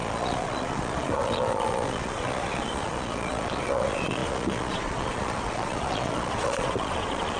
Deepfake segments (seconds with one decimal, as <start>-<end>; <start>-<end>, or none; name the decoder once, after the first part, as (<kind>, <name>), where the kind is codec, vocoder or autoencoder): 0.0-7.4 (vocoder, Vocos)